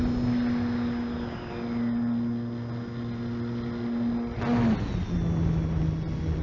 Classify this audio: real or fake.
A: real